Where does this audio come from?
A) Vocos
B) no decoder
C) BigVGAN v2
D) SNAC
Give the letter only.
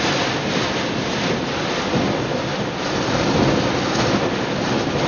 B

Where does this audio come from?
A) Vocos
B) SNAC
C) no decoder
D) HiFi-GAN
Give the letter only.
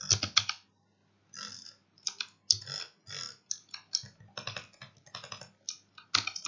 C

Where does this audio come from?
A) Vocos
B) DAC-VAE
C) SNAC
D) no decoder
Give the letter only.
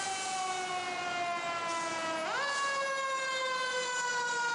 D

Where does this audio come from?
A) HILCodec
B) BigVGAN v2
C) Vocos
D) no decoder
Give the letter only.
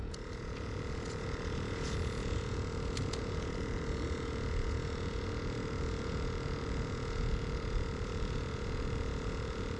C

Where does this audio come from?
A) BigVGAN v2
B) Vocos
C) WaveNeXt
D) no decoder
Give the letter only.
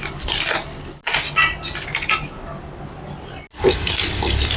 D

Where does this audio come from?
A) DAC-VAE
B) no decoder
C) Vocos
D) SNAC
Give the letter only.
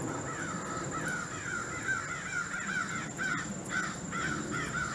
B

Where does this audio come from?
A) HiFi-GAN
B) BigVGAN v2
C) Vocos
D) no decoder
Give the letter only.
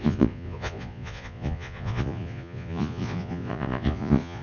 C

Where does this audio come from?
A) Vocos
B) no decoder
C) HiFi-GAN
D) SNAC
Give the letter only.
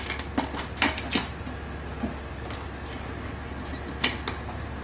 B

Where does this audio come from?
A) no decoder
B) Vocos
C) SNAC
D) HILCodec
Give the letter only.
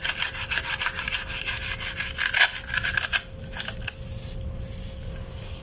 A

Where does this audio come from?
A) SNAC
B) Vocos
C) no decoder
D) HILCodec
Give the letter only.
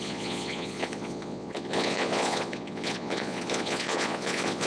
B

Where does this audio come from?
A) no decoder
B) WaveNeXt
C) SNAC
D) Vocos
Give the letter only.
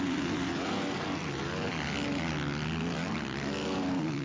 A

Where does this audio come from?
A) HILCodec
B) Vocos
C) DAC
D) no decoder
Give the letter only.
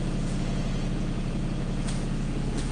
B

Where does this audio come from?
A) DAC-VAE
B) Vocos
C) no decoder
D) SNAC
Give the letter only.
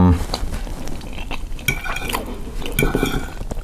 C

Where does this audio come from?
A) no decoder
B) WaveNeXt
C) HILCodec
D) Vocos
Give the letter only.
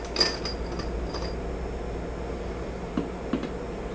A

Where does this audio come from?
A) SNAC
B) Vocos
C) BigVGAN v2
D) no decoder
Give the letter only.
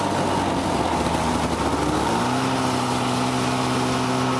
D